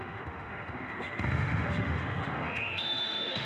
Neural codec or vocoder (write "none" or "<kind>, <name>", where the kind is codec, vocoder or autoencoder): autoencoder, DAC-VAE